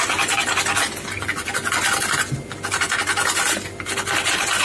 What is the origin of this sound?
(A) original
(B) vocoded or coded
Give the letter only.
A